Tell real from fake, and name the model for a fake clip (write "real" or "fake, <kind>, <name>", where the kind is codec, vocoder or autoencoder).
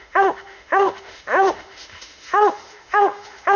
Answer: fake, autoencoder, DAC-VAE